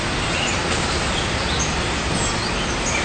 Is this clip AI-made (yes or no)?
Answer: no